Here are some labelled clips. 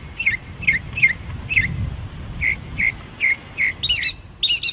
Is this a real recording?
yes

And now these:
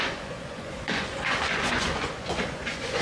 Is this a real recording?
no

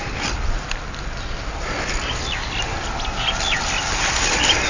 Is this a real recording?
yes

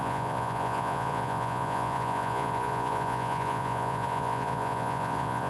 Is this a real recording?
no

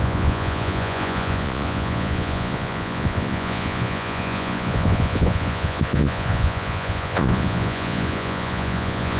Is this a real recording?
no